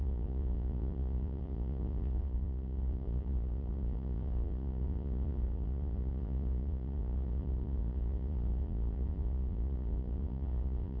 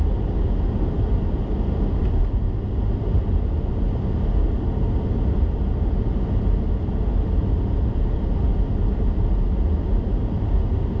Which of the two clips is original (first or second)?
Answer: second